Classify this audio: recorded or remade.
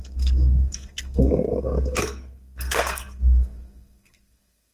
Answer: remade